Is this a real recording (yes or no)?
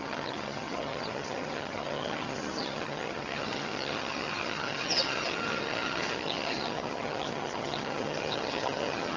no